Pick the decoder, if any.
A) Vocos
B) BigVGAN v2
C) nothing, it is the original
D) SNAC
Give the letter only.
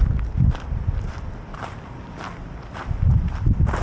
B